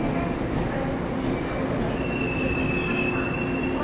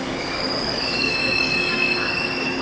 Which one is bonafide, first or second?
first